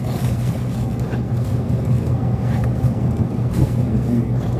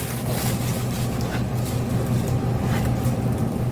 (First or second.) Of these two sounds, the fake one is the first